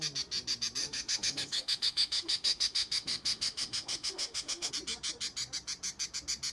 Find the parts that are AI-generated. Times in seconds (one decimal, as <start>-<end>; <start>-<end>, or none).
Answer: 0.8-4.7